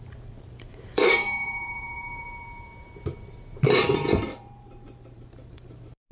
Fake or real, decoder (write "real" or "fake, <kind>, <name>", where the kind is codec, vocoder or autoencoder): fake, vocoder, BigVGAN v2